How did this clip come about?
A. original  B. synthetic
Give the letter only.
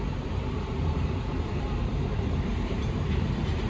B